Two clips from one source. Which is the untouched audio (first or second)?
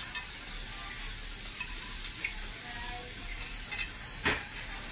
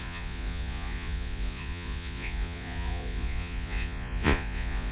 first